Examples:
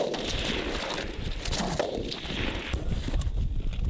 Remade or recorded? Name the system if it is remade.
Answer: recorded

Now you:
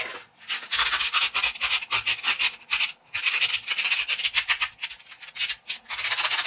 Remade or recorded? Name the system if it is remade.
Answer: recorded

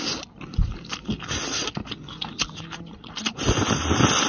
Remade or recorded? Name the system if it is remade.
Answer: recorded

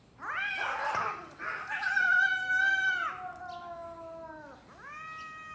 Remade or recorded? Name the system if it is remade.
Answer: recorded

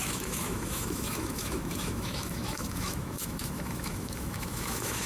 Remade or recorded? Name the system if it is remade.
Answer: remade, autoencoder, DAC-VAE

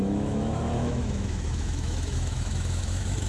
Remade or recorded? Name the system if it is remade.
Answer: remade, autoencoder, DAC-VAE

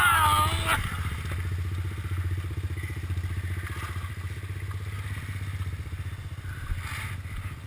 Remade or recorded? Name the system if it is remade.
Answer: recorded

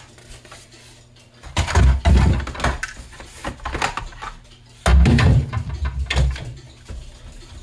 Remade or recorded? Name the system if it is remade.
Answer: recorded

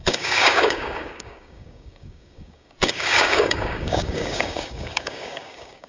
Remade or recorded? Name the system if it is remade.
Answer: remade, codec, DAC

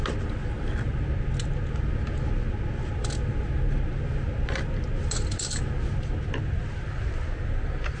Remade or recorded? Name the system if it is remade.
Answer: recorded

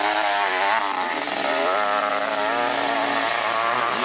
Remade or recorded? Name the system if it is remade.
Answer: recorded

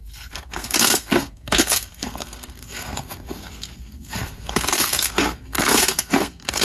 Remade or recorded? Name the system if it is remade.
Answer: remade, codec, SNAC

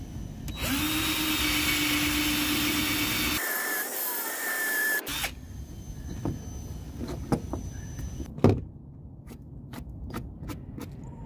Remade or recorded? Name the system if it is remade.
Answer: recorded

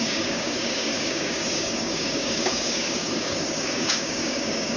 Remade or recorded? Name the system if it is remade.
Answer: remade, codec, DAC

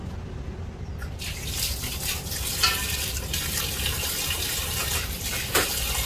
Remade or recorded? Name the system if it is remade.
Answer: remade, vocoder, BigVGAN v2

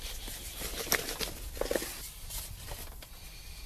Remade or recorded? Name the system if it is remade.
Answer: recorded